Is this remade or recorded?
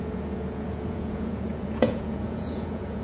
remade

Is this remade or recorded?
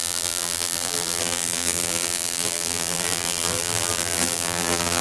remade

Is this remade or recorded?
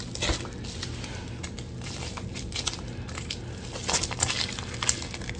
recorded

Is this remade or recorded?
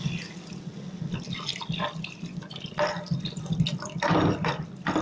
recorded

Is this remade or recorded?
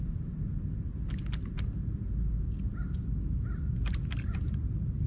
recorded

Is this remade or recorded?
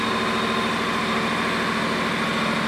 recorded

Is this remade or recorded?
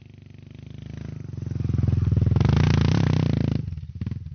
recorded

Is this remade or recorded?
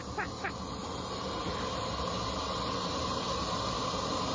recorded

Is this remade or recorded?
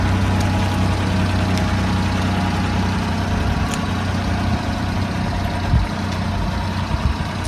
recorded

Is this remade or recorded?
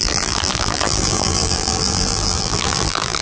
remade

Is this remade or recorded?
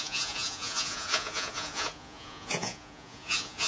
remade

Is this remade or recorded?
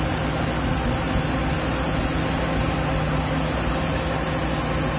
recorded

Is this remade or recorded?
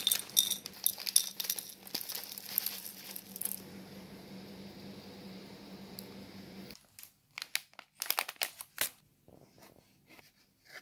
recorded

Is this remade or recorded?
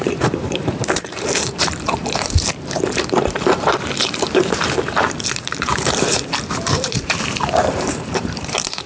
remade